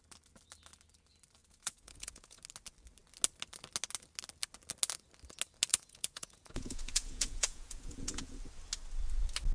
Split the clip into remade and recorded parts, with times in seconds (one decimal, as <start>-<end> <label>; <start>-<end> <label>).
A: 0.0-1.4 recorded; 1.4-2.4 remade; 2.4-5.7 recorded; 5.7-8.4 remade; 8.4-9.5 recorded